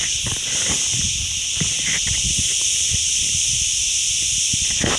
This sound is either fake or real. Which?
real